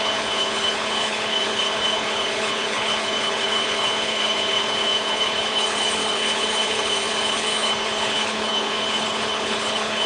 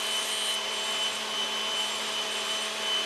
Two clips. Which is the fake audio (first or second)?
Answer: first